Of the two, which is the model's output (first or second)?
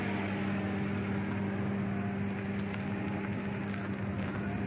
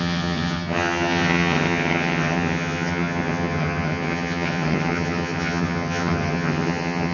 second